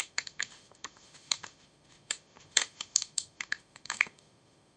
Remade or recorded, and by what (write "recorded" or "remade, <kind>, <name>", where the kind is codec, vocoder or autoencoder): remade, autoencoder, DAC-VAE